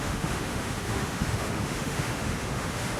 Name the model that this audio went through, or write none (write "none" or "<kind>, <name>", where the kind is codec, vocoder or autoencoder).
autoencoder, DAC-VAE